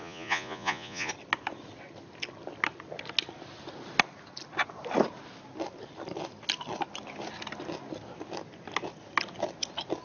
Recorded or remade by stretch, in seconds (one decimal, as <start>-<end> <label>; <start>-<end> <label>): 0.0-1.1 remade; 1.1-10.0 recorded